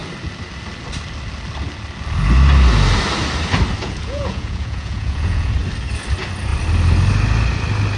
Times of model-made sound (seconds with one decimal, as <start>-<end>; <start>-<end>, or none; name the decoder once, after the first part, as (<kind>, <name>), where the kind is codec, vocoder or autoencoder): 3.8-5.5 (vocoder, Vocos)